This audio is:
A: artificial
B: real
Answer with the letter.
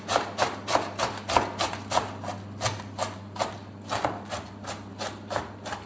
B